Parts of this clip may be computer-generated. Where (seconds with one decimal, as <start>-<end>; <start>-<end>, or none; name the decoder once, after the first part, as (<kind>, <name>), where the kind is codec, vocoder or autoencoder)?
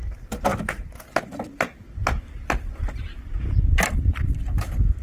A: 0.0-0.5 (vocoder, BigVGAN v2); 1.2-5.0